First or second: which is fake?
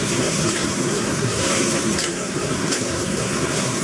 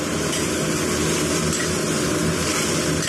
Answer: first